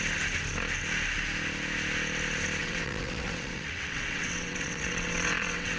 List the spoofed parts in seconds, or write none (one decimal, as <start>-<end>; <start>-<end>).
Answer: 2.6-5.8